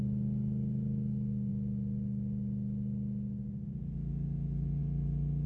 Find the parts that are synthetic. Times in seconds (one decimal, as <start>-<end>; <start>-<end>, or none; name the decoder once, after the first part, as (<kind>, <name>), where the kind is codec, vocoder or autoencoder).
none